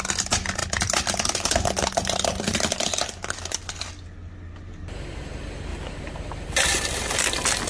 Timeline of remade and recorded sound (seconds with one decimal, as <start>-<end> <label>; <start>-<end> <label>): 0.0-5.7 recorded; 5.7-7.1 remade; 7.1-7.7 recorded